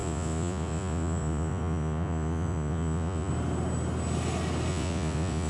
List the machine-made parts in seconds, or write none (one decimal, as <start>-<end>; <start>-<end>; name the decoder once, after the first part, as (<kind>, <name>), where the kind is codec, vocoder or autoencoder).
0.0-3.3 (vocoder, Vocos); 4.7-5.5